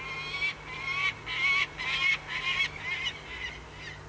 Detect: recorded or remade recorded